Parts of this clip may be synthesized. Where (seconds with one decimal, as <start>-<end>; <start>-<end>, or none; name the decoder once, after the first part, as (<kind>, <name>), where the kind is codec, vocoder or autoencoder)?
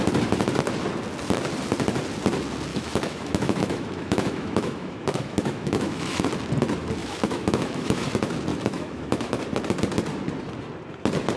2.7-6.2 (autoencoder, DAC-VAE); 7.0-8.1; 8.5-9.4